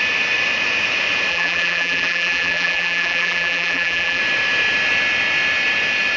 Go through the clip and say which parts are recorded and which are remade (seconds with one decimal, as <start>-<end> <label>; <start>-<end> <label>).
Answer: 0.0-1.3 recorded; 1.3-4.2 remade; 4.2-6.2 recorded